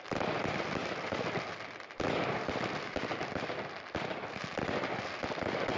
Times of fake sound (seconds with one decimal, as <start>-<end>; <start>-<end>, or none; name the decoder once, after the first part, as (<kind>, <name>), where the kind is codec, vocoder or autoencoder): none